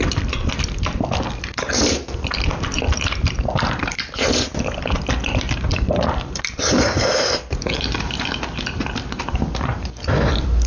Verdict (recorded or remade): remade